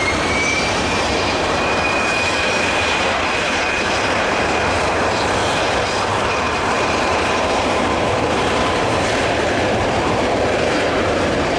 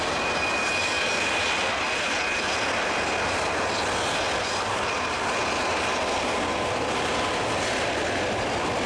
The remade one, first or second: first